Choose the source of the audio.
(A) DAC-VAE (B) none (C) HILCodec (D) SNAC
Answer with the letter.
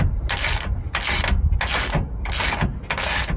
B